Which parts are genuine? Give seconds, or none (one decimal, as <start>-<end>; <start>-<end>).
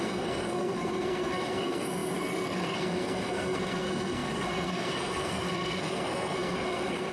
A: none